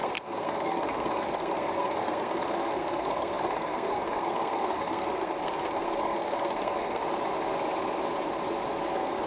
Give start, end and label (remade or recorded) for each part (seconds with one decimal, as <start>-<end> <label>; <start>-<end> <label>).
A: 0.0-7.0 remade; 7.0-8.9 recorded; 8.9-9.3 remade